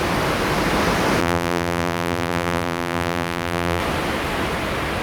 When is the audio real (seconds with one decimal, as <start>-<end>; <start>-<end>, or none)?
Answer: 0.0-1.2; 3.8-5.0